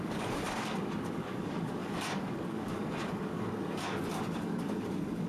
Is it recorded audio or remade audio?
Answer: remade